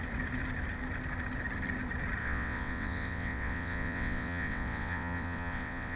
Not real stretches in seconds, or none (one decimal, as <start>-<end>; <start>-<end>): 2.2-6.0